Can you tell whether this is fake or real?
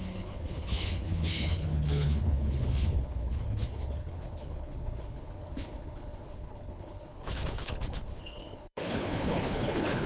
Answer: fake